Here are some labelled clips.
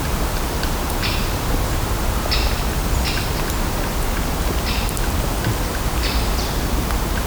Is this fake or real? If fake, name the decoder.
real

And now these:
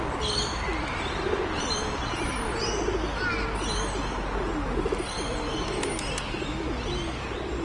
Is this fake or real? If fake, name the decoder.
real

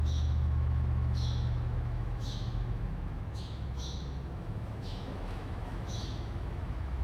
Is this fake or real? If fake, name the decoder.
fake, autoencoder, DAC-VAE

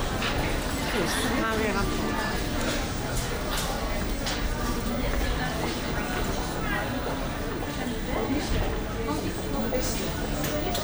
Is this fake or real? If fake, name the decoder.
real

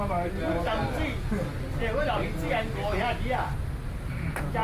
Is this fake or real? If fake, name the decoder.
real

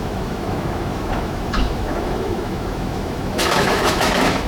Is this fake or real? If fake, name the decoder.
fake, autoencoder, DAC-VAE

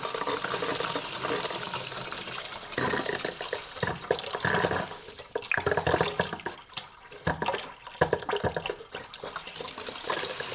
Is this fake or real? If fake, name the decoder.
real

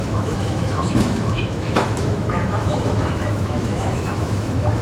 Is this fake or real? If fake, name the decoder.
fake, autoencoder, DAC-VAE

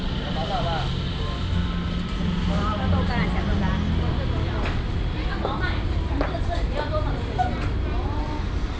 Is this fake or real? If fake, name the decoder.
real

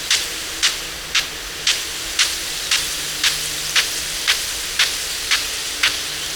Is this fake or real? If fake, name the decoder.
real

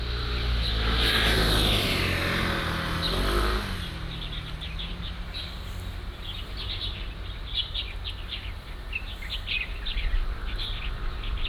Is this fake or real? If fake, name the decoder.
real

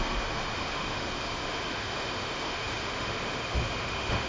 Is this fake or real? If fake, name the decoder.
fake, autoencoder, DAC-VAE